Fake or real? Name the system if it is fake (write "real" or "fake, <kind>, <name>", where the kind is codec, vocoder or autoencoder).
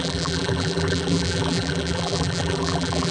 fake, vocoder, BigVGAN v2